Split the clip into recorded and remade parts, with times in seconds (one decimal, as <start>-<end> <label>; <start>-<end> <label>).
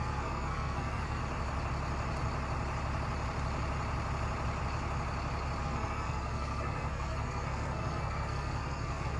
0.0-1.2 remade; 1.2-5.6 recorded; 5.6-9.2 remade